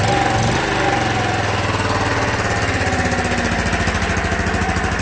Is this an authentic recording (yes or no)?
yes